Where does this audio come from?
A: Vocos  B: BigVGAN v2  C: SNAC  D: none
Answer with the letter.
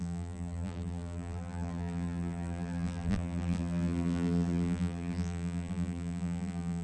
B